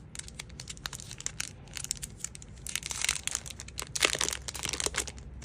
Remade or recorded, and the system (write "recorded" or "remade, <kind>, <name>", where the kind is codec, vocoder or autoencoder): recorded